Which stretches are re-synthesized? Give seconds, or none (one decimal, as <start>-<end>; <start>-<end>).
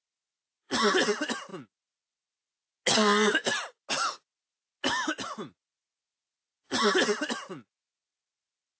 none